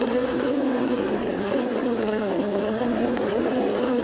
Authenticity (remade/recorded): remade